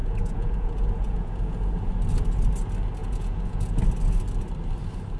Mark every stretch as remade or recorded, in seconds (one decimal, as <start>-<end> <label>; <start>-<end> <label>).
0.0-1.9 remade; 1.9-3.0 recorded; 3.0-3.8 remade; 3.8-5.2 recorded

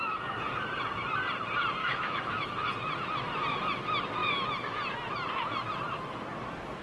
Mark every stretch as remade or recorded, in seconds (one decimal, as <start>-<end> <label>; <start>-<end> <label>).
0.0-1.8 recorded; 1.8-2.7 remade; 2.7-6.8 recorded

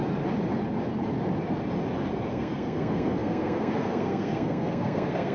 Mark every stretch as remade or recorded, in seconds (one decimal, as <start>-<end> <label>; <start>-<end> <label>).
0.0-2.3 recorded; 2.3-5.3 remade

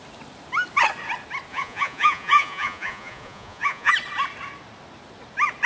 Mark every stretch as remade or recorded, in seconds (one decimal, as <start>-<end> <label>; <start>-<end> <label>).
0.0-1.5 recorded; 1.5-3.9 remade; 3.9-5.7 recorded

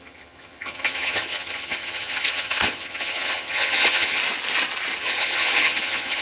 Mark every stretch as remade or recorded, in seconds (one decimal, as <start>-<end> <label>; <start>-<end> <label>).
0.0-4.2 remade; 4.2-5.0 recorded; 5.0-6.2 remade

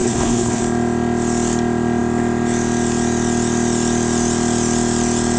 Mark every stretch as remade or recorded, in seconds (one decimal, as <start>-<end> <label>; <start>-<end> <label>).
0.0-0.6 remade; 0.6-5.4 recorded

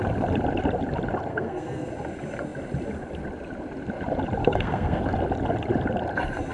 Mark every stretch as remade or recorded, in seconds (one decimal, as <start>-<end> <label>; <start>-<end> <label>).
0.0-1.3 recorded; 1.3-1.9 remade; 1.9-4.4 recorded; 4.4-5.0 remade; 5.0-6.5 recorded